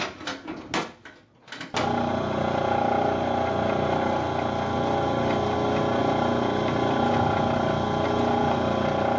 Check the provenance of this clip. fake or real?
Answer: real